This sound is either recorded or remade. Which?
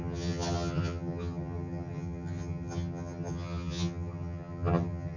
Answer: remade